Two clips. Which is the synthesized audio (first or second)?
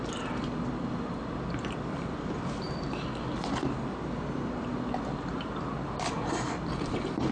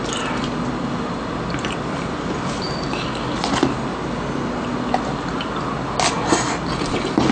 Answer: first